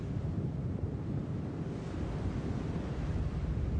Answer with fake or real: real